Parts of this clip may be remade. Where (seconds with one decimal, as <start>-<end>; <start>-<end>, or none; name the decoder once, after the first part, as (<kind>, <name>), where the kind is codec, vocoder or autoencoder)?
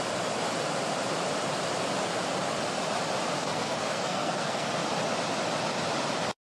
3.4-4.7 (codec, SNAC)